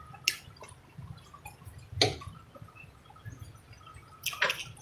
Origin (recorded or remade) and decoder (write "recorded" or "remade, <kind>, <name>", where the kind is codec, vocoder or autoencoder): recorded